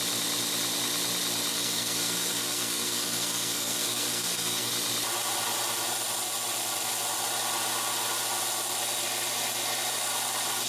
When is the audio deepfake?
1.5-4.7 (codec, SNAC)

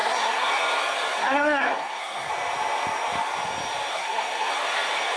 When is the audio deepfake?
0.0-0.5 (codec, SNAC); 1.2-2.3; 3.9-4.5

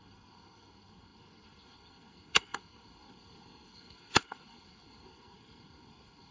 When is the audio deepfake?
0.0-6.3 (codec, SNAC)

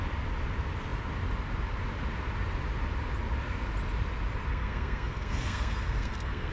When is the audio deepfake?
4.5-6.5 (codec, SNAC)

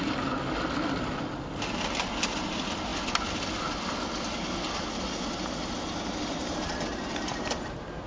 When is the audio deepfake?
none

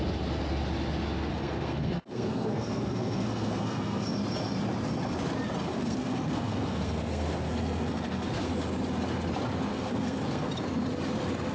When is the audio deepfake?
1.3-4.1 (codec, SNAC); 5.7-8.5; 9.7-10.5

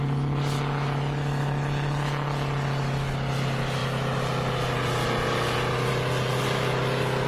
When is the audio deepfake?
none